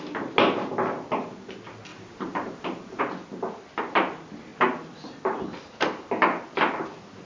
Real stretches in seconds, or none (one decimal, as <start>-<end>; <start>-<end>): 0.0-1.9; 3.0-7.3